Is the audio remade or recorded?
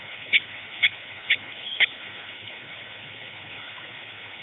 remade